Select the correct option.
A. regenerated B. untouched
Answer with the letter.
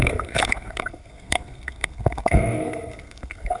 A